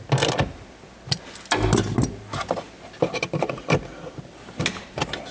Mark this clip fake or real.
real